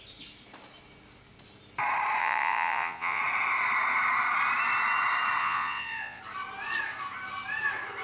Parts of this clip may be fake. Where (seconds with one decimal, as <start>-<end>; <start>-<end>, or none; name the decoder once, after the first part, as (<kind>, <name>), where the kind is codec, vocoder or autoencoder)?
2.2-3.2 (vocoder, Vocos); 5.4-6.2